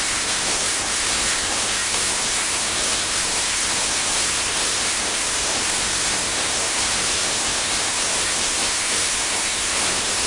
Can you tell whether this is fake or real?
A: fake